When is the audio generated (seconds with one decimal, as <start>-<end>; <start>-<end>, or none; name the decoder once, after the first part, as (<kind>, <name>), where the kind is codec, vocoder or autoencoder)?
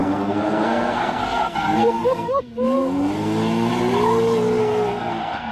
0.0-3.7 (codec, SNAC); 4.6-5.5